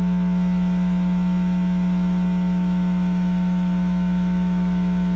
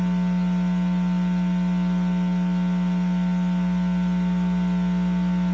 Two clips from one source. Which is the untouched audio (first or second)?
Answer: second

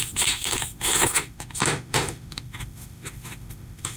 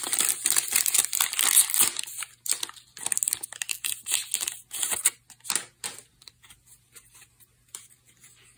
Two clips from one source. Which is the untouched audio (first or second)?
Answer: second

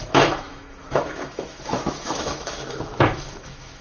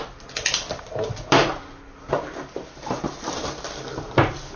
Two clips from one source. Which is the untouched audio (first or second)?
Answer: second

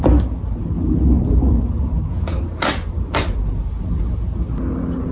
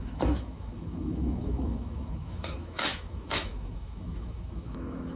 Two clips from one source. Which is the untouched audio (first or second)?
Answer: first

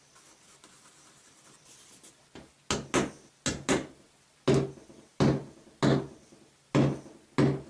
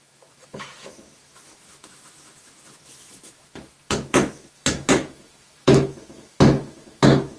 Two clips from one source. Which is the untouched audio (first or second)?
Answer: first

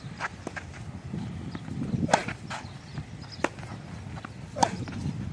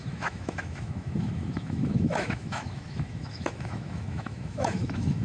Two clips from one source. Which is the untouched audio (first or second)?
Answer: first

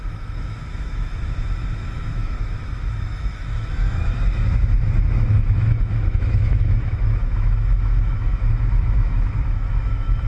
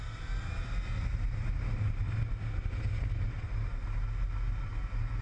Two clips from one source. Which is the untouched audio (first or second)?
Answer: second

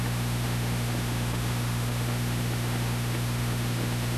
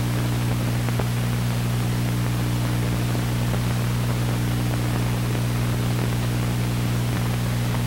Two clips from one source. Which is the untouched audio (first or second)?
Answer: second